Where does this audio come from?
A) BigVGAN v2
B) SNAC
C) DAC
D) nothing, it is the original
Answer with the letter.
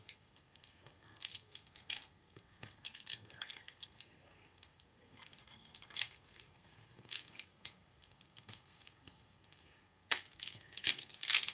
B